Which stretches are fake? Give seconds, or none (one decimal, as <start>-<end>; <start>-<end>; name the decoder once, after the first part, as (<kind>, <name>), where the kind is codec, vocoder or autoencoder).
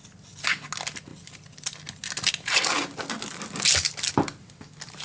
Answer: none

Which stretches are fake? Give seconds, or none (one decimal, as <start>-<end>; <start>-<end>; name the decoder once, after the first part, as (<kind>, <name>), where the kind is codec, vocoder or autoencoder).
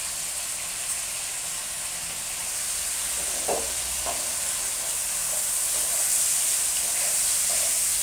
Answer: none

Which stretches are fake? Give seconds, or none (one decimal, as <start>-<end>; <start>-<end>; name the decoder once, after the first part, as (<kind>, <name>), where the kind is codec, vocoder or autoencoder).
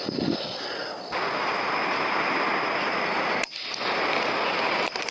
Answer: none